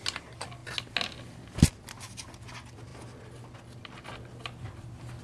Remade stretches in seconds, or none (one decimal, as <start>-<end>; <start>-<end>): none